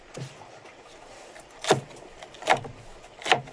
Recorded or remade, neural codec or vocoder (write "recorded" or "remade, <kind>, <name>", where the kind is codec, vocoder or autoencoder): recorded